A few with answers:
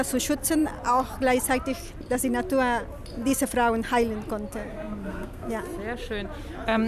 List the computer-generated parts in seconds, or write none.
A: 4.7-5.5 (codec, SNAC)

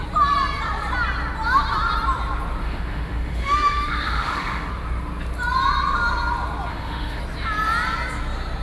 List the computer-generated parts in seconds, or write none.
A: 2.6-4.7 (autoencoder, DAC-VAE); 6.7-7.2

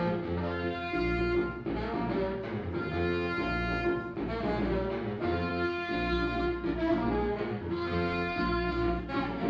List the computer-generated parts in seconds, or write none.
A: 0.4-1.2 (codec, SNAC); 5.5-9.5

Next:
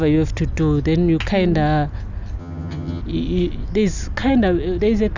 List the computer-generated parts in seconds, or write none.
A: 2.4-3.0 (vocoder, HiFi-GAN)

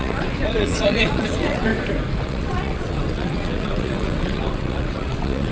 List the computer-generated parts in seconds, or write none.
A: 0.0-1.7 (vocoder, WaveNeXt); 2.2-5.5

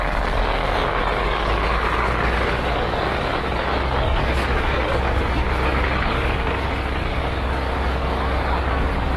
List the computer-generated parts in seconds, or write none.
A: 0.0-0.6 (codec, DAC); 1.2-9.2